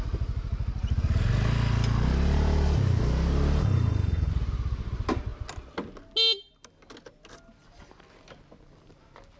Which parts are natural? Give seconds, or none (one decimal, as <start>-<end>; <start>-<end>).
0.0-3.6; 4.3-9.4